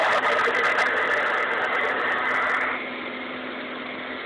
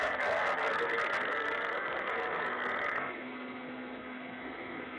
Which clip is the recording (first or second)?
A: first